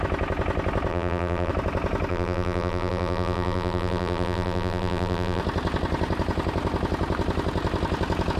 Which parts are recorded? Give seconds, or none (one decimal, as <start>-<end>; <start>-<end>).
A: 0.0-0.9; 1.5-2.1; 5.4-8.4